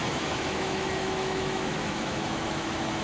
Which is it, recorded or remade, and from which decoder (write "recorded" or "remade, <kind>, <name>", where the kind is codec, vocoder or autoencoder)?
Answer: remade, autoencoder, DAC-VAE